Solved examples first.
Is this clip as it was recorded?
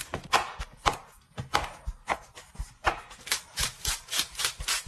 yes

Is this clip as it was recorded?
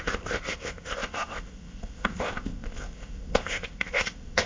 no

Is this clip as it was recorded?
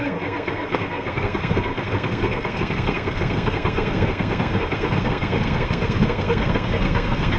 no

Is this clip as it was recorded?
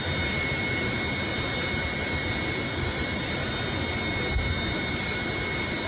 yes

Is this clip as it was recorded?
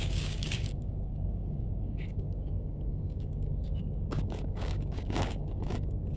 no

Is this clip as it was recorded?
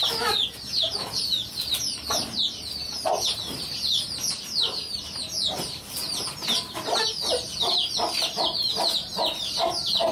yes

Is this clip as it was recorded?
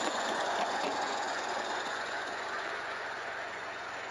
no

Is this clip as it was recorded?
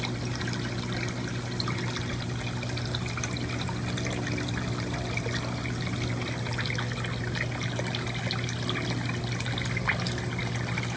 yes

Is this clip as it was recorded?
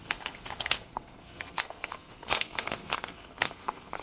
no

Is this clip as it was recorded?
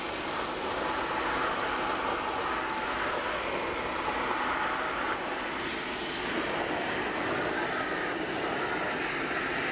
yes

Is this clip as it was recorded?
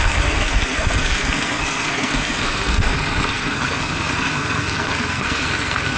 no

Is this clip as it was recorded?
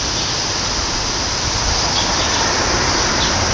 yes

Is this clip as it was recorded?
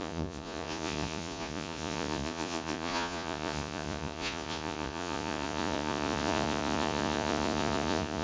no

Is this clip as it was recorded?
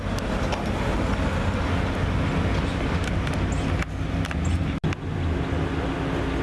yes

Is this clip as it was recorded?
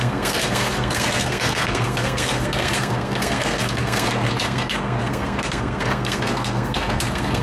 no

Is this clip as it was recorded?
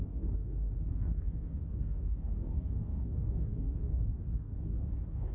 no